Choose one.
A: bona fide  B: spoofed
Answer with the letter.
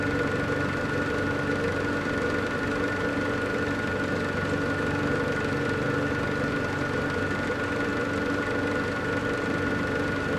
A